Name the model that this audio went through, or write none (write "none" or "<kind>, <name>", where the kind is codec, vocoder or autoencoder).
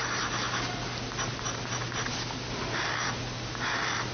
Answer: none